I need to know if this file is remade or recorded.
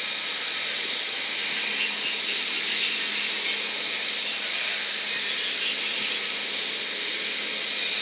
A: recorded